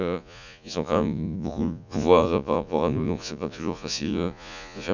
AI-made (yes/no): yes